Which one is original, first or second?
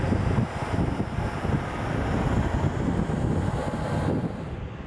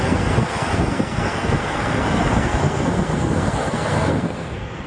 first